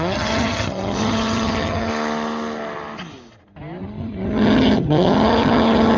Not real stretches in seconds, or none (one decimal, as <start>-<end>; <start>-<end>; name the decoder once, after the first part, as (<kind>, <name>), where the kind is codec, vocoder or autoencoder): 0.0-1.9 (vocoder, HiFi-GAN); 3.8-6.0